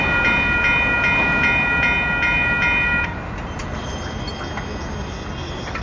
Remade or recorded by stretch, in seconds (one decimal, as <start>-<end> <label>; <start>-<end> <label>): 0.0-5.8 recorded